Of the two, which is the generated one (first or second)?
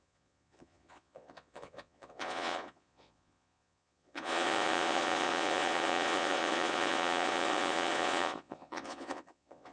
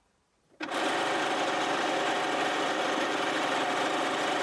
first